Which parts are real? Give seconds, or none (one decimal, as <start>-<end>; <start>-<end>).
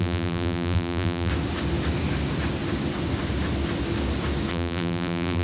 1.3-4.5